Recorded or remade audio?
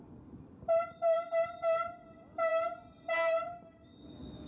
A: remade